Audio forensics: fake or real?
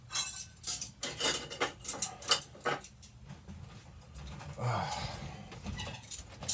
real